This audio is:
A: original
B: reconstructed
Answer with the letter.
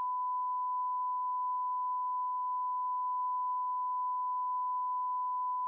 B